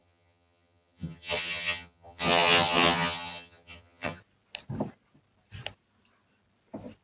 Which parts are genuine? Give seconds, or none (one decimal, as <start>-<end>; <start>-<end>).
4.2-7.0